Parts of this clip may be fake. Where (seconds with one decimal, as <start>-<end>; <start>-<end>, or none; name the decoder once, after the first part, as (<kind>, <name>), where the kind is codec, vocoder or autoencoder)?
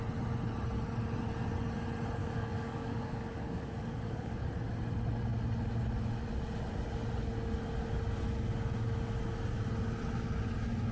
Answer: 2.2-4.4 (codec, DAC)